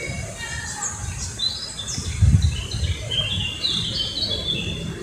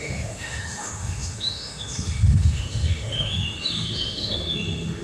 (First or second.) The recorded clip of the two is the first